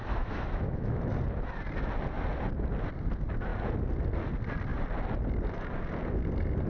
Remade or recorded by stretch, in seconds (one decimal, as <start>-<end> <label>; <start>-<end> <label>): 0.0-1.0 remade; 1.0-6.7 recorded